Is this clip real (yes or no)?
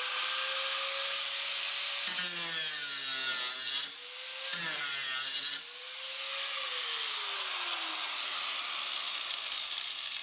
yes